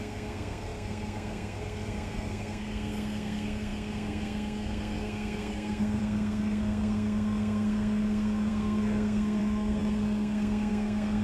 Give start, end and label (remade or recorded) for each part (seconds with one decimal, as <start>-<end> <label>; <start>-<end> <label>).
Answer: 0.0-11.2 remade